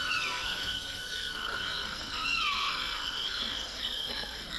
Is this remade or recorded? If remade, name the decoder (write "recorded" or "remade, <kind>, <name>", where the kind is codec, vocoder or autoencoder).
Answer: remade, codec, SNAC